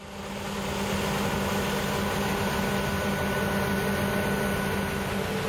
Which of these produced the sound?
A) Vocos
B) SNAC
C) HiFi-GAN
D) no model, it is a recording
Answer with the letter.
D